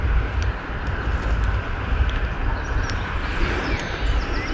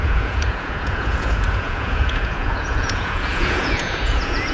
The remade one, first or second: second